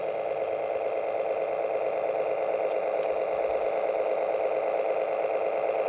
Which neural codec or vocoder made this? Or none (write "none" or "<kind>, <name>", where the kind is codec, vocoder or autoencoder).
none